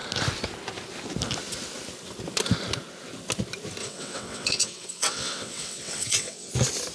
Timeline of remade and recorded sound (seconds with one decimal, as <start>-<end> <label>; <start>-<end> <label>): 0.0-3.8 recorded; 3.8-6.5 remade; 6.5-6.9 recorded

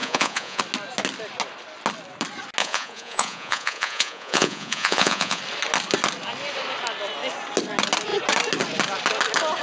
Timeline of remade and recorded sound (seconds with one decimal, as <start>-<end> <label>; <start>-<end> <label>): 0.0-0.6 remade; 0.6-2.6 recorded; 2.6-5.4 remade; 5.4-9.6 recorded

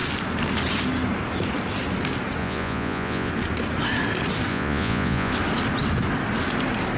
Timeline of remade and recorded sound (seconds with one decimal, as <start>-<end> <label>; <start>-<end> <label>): 0.0-2.4 recorded; 2.4-3.3 remade; 3.3-4.5 recorded; 4.5-5.3 remade; 5.3-7.0 recorded